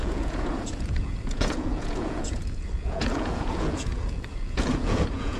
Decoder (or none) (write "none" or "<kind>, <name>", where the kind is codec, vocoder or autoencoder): vocoder, Vocos